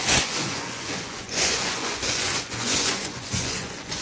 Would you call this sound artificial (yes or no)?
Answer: yes